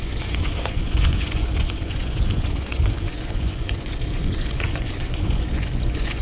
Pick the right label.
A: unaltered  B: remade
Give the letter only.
B